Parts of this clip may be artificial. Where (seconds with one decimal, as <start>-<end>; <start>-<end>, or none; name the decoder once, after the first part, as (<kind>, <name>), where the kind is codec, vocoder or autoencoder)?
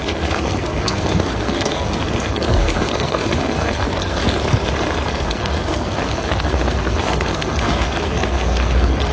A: 0.0-4.2 (codec, SNAC); 5.1-9.1